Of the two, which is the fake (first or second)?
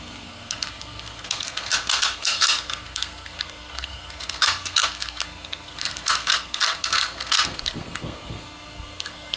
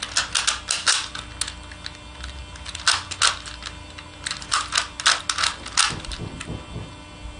first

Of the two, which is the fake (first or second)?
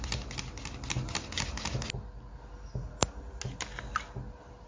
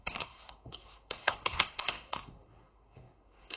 second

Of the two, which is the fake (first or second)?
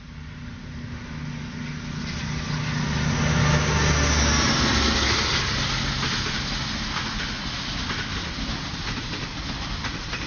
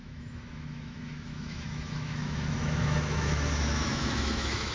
second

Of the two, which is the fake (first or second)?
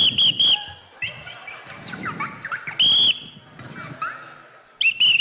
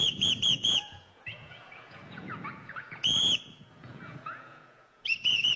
second